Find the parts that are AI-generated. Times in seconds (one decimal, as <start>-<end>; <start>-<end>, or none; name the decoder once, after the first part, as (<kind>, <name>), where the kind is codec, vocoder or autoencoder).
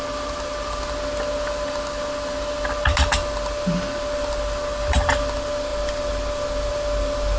none